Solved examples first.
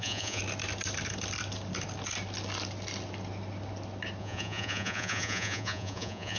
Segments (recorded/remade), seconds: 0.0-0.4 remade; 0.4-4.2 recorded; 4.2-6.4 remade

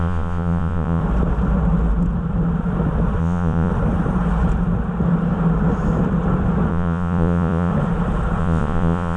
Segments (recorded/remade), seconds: 0.0-1.0 remade; 1.0-3.2 recorded; 3.2-3.7 remade; 3.7-6.7 recorded; 6.7-7.7 remade; 7.7-8.4 recorded; 8.4-9.2 remade

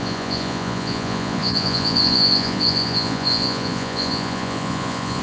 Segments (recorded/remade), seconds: 0.0-5.2 remade

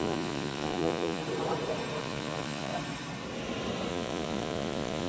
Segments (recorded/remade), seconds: 0.0-1.2 remade; 1.2-2.0 recorded; 2.0-2.7 remade; 2.7-3.9 recorded; 3.9-5.1 remade

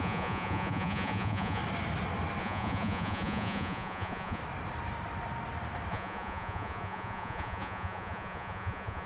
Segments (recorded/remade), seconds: 0.0-1.6 remade; 1.6-2.4 recorded; 2.4-4.4 remade; 4.4-5.9 recorded; 5.9-9.1 remade

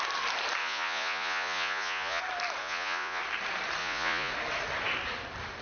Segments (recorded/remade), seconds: 0.0-0.6 recorded; 0.6-2.2 remade; 2.2-2.6 recorded; 2.6-3.2 remade; 3.2-3.8 recorded; 3.8-4.3 remade; 4.3-5.6 recorded

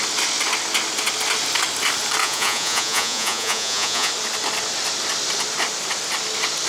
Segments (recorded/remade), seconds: 0.0-2.2 recorded; 2.2-4.1 remade; 4.1-6.7 recorded

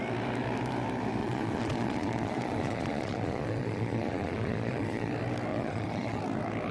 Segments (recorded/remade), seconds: 0.0-1.2 recorded; 1.2-5.1 remade; 5.1-5.5 recorded; 5.5-6.2 remade; 6.2-6.7 recorded